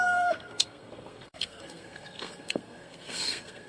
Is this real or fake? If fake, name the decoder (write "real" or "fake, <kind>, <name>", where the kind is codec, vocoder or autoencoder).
fake, codec, SNAC